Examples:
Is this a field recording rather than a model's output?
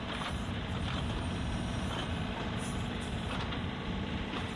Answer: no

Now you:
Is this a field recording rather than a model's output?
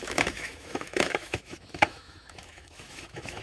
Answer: no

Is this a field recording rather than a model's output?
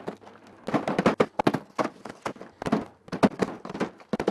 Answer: yes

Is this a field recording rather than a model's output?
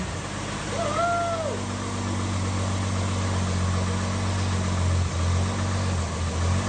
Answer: yes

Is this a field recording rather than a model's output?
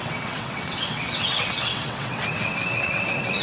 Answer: no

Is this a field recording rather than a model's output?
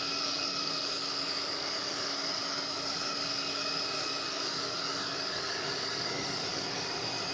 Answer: no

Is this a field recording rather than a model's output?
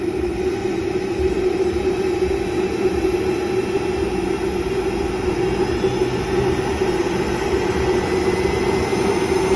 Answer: yes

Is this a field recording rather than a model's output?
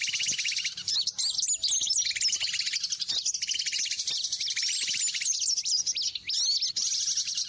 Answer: yes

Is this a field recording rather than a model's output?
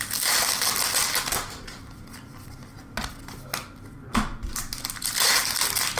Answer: yes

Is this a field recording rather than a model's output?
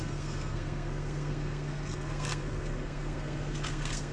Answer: no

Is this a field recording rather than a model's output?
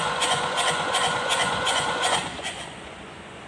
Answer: no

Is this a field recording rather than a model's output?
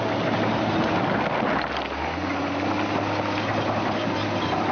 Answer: yes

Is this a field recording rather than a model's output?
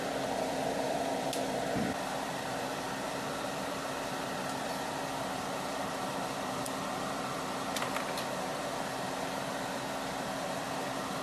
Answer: no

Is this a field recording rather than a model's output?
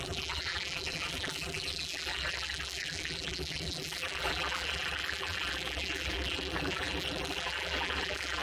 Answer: no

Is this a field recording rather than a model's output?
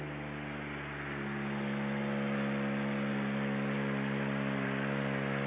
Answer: yes